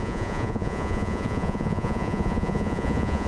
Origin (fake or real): fake